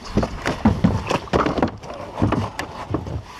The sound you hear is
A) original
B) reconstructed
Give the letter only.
A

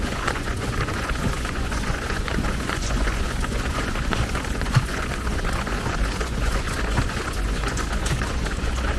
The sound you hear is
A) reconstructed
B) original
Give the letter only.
A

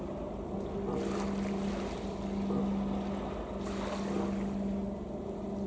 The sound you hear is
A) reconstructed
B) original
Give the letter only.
B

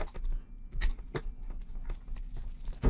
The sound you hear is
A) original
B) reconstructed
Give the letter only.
A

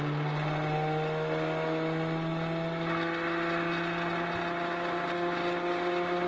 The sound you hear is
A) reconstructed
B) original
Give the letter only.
B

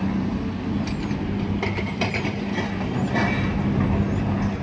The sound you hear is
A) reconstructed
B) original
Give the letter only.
B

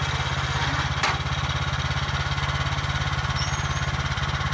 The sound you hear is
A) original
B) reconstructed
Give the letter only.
A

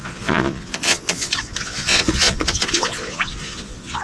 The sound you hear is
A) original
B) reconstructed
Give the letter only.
B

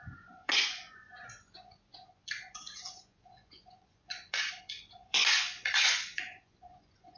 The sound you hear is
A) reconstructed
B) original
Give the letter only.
A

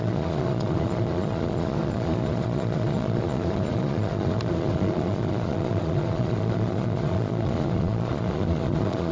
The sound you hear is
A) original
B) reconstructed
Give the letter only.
B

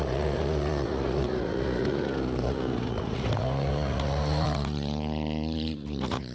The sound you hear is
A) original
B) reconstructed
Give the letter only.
B